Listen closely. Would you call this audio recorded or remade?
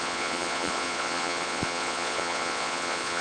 remade